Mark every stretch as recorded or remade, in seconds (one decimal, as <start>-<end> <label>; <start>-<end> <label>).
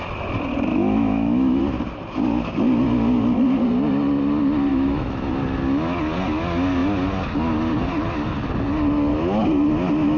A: 0.0-0.7 recorded; 0.7-1.6 remade; 1.6-4.7 recorded; 4.7-5.3 remade; 5.3-10.2 recorded